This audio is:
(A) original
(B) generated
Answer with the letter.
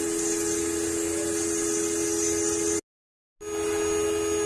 A